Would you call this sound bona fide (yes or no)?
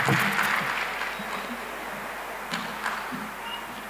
yes